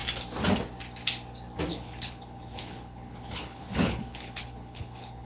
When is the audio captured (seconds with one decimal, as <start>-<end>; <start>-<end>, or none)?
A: 0.0-1.7